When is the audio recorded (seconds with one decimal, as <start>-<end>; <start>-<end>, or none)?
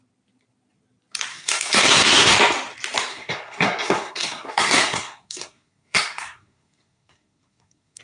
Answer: 0.0-1.3; 2.3-3.1